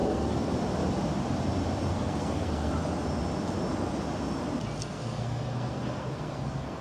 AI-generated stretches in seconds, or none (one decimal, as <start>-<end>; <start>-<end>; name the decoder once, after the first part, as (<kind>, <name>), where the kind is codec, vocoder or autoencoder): 0.0-0.5 (codec, SNAC); 1.9-2.7; 4.8-6.8